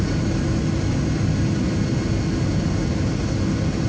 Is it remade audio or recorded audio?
recorded